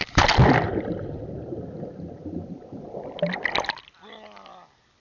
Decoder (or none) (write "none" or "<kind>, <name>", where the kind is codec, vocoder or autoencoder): none